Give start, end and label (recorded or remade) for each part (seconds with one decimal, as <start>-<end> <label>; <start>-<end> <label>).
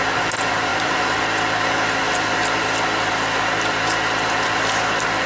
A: 0.0-0.7 recorded; 0.7-1.2 remade; 1.2-5.3 recorded